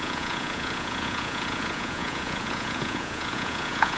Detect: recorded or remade remade